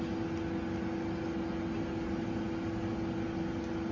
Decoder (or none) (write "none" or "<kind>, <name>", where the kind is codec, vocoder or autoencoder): none